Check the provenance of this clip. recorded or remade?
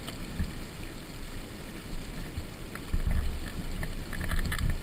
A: recorded